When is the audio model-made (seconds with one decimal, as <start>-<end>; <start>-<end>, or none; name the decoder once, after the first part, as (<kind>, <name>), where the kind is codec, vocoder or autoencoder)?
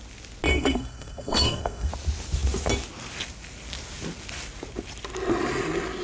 0.5-1.9 (codec, SNAC)